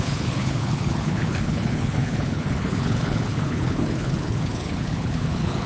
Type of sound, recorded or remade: remade